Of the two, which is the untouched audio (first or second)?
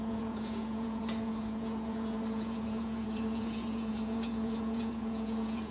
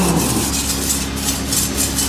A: second